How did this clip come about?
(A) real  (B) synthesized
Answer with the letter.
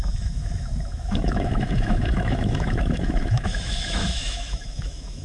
B